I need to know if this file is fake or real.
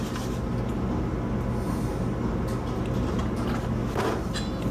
real